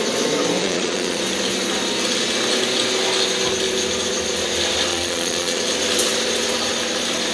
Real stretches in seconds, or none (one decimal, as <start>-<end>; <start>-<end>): 0.0-0.6; 1.2-4.9; 5.6-7.3